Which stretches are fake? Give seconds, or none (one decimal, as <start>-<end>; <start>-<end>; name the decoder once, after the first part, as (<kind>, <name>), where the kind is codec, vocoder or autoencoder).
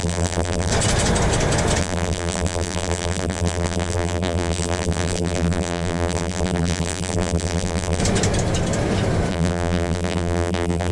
0.0-0.7 (vocoder, BigVGAN v2); 1.8-8.0; 9.3-10.9